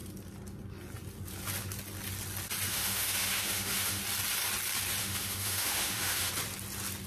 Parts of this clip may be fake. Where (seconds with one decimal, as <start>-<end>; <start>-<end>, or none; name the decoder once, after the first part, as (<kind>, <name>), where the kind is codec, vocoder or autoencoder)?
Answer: 2.7-4.0 (autoencoder, DAC-VAE); 5.0-6.3